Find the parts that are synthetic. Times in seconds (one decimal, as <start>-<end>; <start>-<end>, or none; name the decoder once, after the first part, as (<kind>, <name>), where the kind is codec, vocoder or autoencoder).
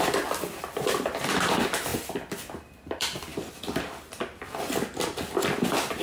0.0-1.9 (vocoder, BigVGAN v2); 2.7-6.0